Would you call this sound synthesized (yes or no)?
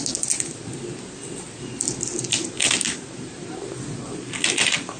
no